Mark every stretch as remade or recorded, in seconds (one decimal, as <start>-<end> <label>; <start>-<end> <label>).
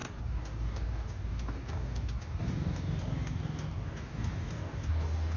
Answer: 0.0-5.4 remade